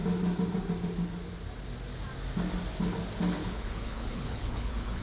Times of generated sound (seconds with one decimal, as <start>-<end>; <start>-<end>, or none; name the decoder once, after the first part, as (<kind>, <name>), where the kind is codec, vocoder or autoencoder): 3.4-5.0 (codec, HILCodec)